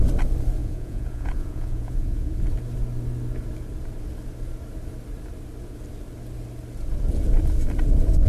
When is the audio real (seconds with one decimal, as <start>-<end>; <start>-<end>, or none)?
0.0-0.6; 2.4-8.3